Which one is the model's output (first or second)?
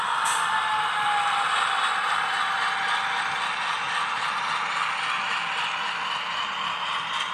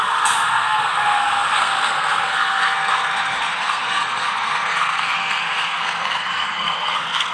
second